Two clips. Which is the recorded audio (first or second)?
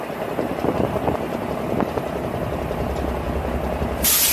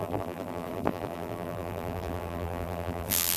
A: first